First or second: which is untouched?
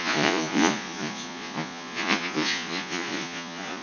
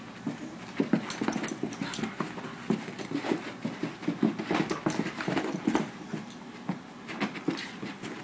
second